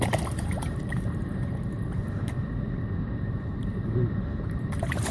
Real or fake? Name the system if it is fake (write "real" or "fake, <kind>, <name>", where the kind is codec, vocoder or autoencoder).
fake, vocoder, BigVGAN v2